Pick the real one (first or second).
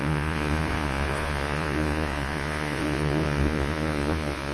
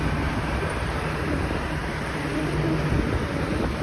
second